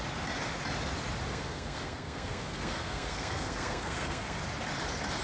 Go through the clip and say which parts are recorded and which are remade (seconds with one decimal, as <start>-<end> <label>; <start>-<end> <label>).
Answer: 0.0-1.3 recorded; 1.3-4.4 remade; 4.4-5.2 recorded